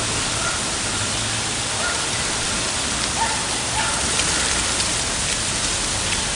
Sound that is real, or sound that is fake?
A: real